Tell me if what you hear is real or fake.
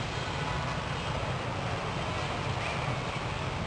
real